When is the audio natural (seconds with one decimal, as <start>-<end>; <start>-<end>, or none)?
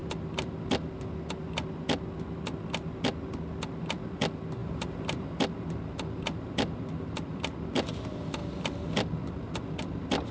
0.0-4.6; 5.4-10.3